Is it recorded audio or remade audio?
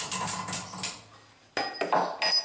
recorded